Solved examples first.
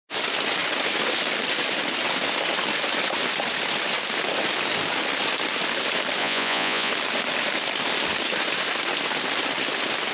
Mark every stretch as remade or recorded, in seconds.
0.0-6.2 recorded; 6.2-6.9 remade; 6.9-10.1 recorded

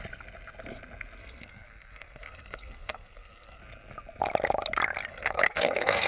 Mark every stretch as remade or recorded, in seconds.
0.0-1.2 recorded; 1.2-3.6 remade; 3.6-5.1 recorded; 5.1-6.1 remade

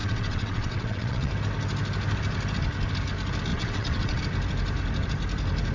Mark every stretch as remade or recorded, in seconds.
0.0-1.3 remade; 1.3-3.5 recorded; 3.5-4.2 remade; 4.2-5.7 recorded

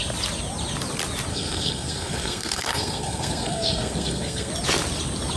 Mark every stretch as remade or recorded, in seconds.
0.0-1.3 recorded; 1.3-4.5 remade; 4.5-5.4 recorded